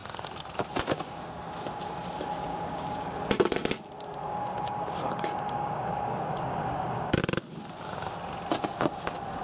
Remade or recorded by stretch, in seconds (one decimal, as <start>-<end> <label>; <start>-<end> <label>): 0.0-2.5 recorded; 2.5-3.2 remade; 3.2-4.2 recorded; 4.2-7.2 remade; 7.2-9.4 recorded